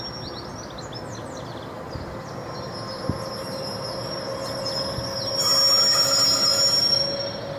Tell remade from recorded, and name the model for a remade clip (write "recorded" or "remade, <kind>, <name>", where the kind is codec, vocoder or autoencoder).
recorded